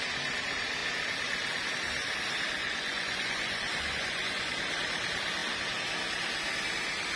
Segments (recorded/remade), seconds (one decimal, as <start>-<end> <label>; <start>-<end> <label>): 0.0-2.6 recorded; 2.6-4.5 remade; 4.5-7.2 recorded